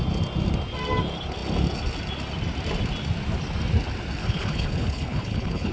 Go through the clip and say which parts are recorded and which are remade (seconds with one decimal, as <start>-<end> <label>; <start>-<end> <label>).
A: 0.0-4.2 recorded; 4.2-5.7 remade